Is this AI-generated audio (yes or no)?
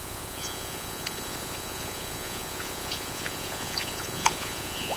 yes